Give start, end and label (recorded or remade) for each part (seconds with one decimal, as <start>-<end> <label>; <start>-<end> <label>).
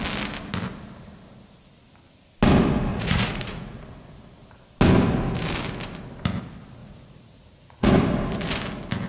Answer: 0.0-2.9 recorded; 2.9-3.8 remade; 3.8-6.8 recorded; 6.8-7.9 remade; 7.9-9.1 recorded